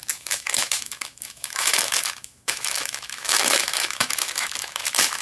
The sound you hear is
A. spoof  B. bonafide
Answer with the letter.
A